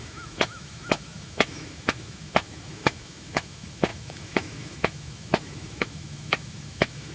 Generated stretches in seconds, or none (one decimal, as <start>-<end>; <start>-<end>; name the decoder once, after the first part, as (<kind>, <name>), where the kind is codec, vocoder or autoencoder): 0.0-7.1 (autoencoder, DAC-VAE)